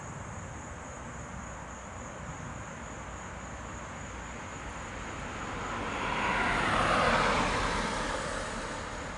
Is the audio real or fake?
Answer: real